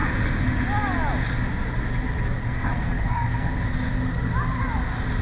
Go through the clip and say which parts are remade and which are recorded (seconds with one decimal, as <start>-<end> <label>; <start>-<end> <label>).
0.0-2.4 recorded; 2.4-3.5 remade; 3.5-5.2 recorded